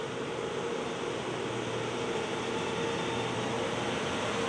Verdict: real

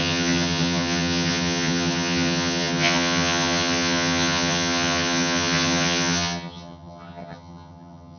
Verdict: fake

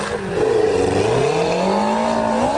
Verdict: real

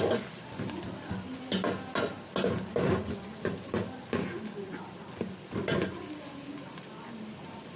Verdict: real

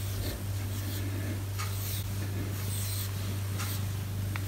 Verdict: real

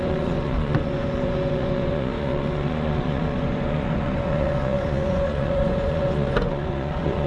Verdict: fake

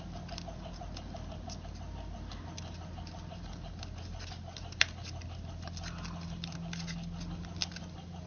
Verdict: real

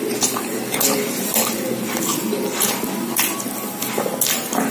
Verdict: real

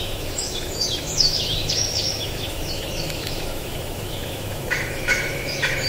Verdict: fake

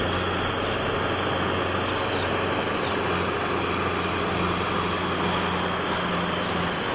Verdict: real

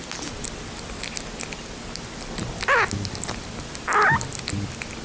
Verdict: real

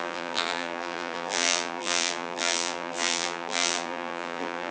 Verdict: fake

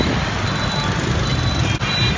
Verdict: real